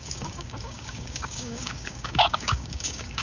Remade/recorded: remade